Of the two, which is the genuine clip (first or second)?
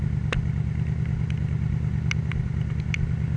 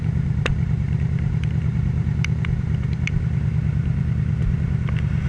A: first